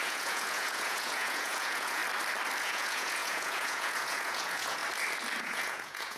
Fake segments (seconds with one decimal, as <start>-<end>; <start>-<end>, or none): 0.0-2.0; 2.6-4.8; 5.4-6.2